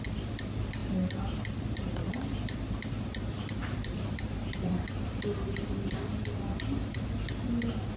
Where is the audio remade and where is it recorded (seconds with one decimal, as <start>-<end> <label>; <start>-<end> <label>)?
0.0-3.6 recorded; 3.6-7.4 remade; 7.4-8.0 recorded